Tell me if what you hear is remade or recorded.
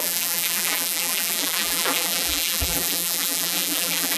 remade